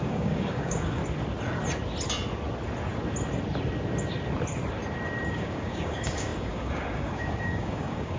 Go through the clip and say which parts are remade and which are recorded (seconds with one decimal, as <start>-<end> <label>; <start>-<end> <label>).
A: 0.0-1.0 remade; 1.0-5.3 recorded; 5.3-8.2 remade